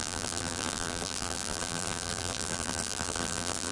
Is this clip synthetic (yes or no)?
yes